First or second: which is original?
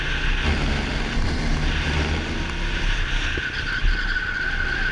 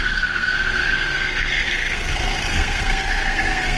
first